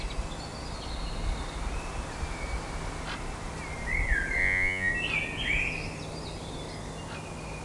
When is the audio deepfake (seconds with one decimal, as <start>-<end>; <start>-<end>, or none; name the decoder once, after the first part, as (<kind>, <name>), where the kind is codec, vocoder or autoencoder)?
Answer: 4.4-4.9 (vocoder, Vocos)